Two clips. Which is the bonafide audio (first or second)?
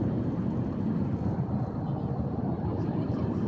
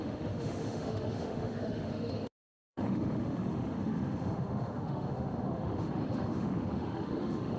first